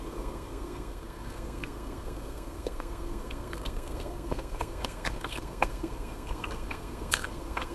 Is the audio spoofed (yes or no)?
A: yes